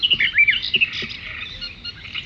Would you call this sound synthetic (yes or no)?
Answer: no